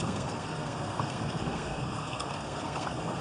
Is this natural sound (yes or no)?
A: no